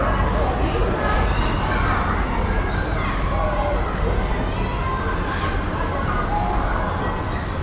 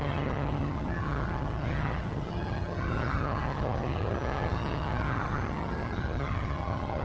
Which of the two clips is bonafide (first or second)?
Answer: first